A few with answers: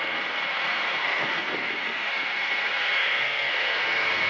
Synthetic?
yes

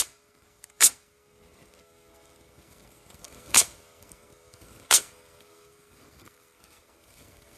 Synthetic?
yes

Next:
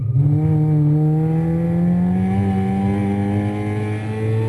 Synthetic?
no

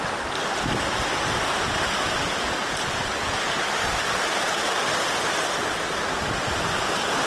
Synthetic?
no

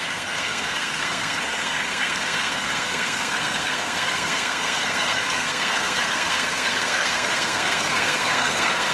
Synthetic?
yes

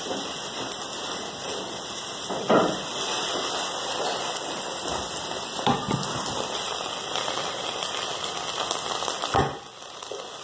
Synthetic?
no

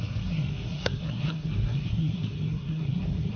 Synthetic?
yes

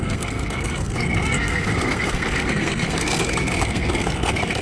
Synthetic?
yes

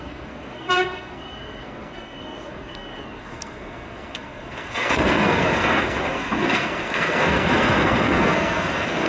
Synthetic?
yes